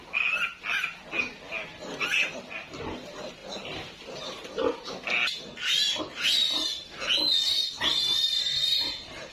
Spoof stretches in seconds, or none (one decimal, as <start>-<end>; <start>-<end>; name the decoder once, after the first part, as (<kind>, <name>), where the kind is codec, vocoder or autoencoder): none